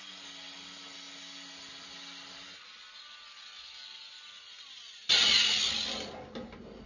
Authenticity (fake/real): real